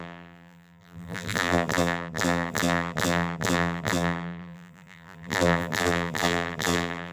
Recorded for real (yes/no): no